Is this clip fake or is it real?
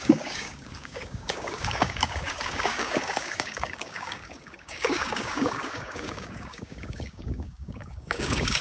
fake